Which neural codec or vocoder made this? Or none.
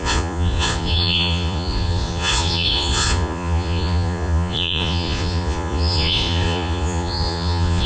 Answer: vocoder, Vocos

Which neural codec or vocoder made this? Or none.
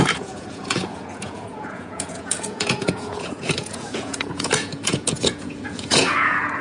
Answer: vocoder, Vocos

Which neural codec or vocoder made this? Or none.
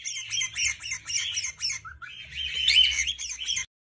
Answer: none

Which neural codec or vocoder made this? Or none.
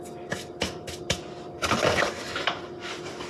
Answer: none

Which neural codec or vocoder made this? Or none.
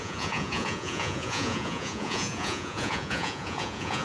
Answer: vocoder, Vocos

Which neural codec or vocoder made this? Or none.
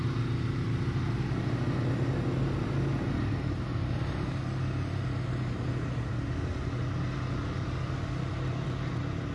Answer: none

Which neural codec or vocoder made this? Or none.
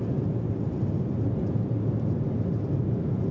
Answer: none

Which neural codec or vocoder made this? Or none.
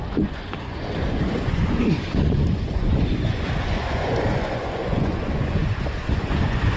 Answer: vocoder, Vocos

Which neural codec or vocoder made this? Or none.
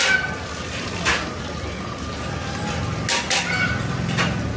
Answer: none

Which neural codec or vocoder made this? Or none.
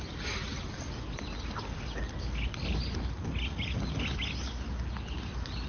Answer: none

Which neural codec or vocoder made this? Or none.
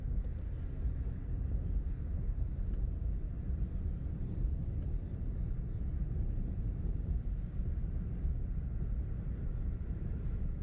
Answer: none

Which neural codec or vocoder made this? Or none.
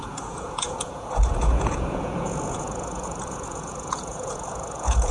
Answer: vocoder, Vocos